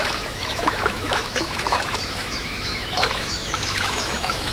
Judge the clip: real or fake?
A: fake